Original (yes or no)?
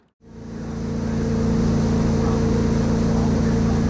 yes